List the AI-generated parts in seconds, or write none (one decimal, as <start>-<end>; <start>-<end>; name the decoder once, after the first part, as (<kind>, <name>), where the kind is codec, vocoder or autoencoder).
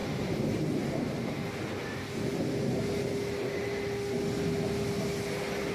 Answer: 0.0-1.1 (vocoder, BigVGAN v2)